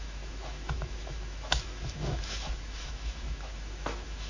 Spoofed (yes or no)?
yes